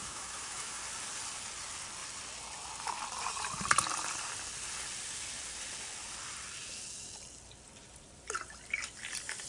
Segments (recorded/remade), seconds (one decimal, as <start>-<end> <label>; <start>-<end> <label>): 0.0-0.8 remade; 0.8-9.5 recorded